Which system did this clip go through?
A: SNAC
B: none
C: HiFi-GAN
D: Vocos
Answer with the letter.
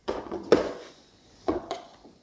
D